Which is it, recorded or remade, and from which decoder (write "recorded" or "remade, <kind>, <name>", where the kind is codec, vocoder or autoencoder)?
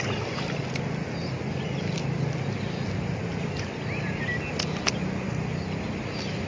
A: recorded